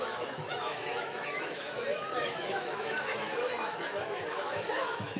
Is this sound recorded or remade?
remade